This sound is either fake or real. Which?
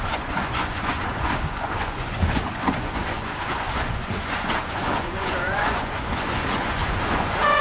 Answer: fake